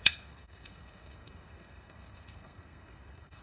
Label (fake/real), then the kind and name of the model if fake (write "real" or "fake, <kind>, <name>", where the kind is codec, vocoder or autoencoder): fake, codec, SNAC